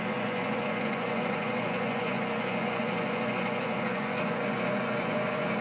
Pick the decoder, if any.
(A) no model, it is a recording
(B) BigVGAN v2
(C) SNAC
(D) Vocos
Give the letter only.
D